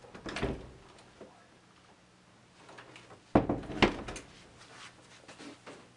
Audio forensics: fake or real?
real